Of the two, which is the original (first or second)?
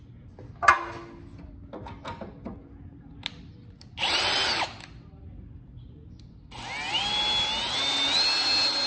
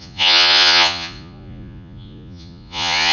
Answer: first